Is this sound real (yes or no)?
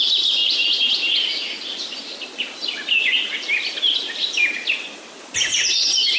no